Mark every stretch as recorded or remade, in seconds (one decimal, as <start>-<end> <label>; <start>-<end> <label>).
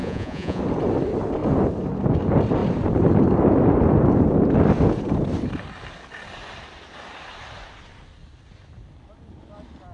0.0-0.6 remade; 0.6-9.9 recorded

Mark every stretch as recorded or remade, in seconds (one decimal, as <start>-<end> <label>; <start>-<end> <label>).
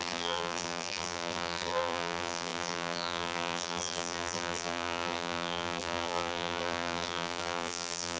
0.0-8.2 remade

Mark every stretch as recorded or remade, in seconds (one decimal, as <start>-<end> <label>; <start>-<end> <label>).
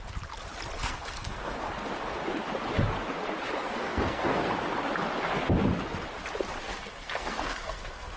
0.0-0.8 recorded; 0.8-1.6 remade; 1.6-3.6 recorded; 3.6-4.5 remade; 4.5-6.6 recorded; 6.6-8.2 remade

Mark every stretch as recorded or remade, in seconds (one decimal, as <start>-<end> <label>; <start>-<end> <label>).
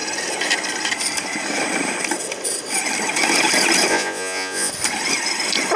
0.0-3.9 recorded; 3.9-4.7 remade; 4.7-5.8 recorded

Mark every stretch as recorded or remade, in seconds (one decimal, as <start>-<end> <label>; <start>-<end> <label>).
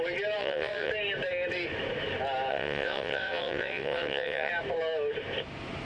0.0-0.4 recorded; 0.4-0.9 remade; 0.9-2.5 recorded; 2.5-4.5 remade; 4.5-5.9 recorded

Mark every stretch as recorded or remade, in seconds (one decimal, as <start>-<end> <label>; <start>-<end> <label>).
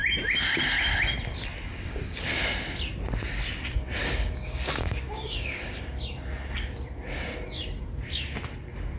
0.0-1.7 recorded; 1.7-2.3 remade; 2.3-4.0 recorded; 4.0-5.8 remade; 5.8-9.0 recorded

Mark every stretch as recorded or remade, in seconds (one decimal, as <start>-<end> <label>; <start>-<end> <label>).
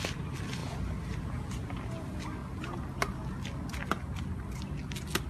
0.0-5.3 recorded